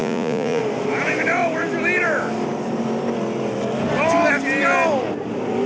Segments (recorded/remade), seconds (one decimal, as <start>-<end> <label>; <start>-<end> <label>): 0.0-0.6 remade; 0.6-5.7 recorded